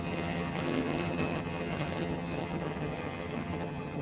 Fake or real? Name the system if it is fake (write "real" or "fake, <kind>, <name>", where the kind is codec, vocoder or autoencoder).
fake, vocoder, HiFi-GAN